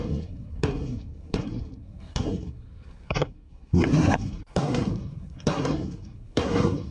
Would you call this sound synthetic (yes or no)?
yes